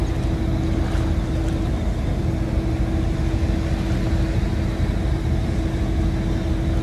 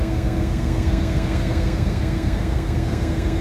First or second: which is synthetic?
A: second